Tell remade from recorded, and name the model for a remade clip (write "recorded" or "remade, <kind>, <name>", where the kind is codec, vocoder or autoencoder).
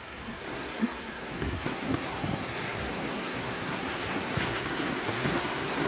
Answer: remade, codec, SNAC